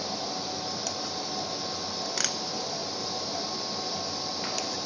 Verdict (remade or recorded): recorded